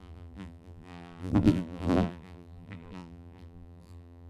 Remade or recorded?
remade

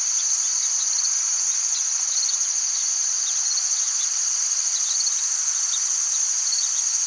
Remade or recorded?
recorded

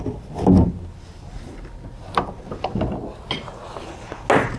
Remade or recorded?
recorded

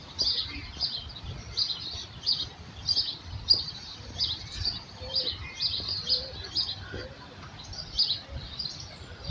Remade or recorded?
recorded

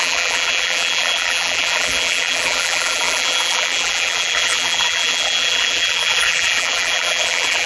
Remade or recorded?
remade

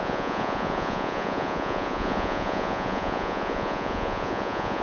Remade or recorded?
remade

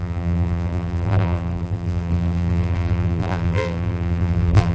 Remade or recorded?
remade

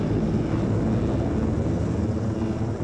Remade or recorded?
recorded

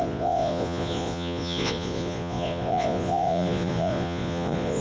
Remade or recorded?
remade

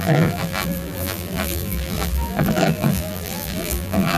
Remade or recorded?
remade